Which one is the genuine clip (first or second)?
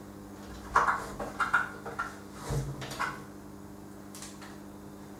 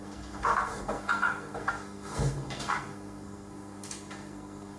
first